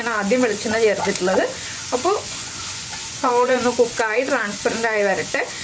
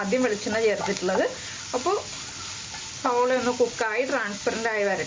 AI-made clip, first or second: first